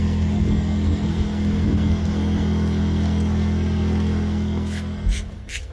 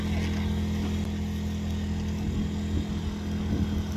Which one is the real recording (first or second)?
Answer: second